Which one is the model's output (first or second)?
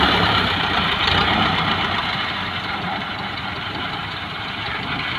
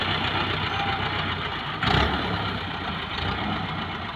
first